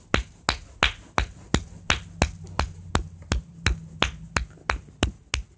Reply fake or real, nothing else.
real